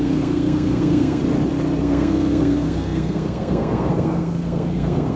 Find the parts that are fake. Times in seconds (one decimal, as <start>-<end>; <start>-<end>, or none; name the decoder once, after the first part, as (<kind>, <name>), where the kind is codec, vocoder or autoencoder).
0.0-1.2 (codec, SNAC); 1.8-5.2